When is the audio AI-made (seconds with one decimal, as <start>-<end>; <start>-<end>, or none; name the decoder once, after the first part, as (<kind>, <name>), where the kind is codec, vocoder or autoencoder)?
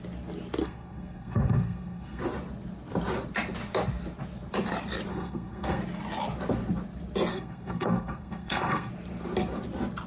0.6-2.2 (codec, SNAC); 5.1-5.8; 7.3-8.9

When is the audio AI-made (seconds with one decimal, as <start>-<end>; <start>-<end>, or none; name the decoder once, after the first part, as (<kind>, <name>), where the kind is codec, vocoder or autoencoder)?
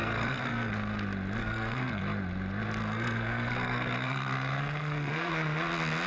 0.0-0.7 (codec, SNAC); 1.4-2.0; 2.8-5.3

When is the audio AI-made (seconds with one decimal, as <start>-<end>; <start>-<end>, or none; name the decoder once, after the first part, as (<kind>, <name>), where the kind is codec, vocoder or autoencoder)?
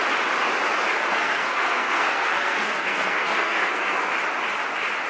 1.0-4.1 (codec, SNAC)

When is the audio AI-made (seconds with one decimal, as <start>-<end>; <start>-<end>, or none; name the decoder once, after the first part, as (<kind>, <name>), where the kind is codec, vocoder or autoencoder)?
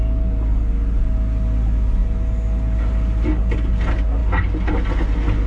none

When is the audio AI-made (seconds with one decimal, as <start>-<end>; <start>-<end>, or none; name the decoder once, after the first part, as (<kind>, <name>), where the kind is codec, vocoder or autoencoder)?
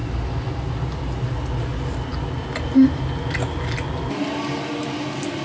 none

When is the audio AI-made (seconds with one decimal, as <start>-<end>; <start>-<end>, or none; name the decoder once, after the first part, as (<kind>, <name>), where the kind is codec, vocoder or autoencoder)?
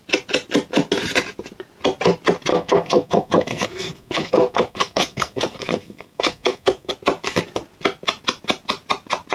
2.5-6.9 (codec, SNAC)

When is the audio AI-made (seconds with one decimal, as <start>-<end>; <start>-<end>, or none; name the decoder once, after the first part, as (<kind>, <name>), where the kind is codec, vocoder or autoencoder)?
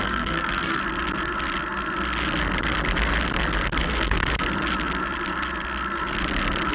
0.0-0.8 (codec, SNAC); 3.8-4.3